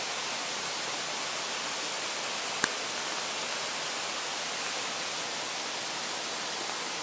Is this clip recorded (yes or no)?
yes